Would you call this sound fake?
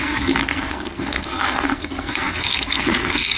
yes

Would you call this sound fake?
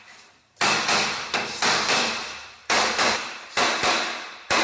yes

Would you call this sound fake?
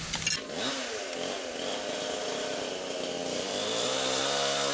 no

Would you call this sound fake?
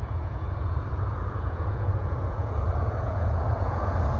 yes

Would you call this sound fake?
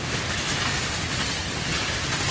no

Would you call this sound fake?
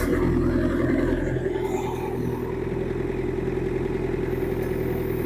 no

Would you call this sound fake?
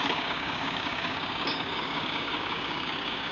yes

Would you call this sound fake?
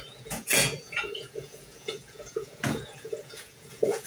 yes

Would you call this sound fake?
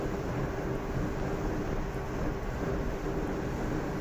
no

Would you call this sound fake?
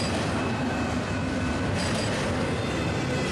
no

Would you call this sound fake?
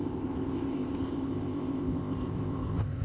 yes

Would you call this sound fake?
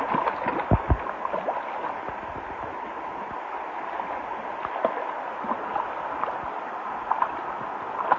no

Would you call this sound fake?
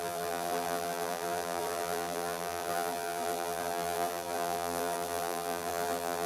yes